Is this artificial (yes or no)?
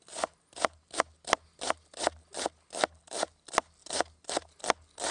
no